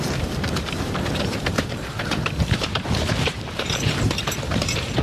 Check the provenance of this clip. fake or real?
fake